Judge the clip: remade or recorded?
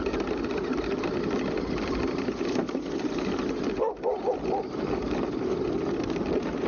recorded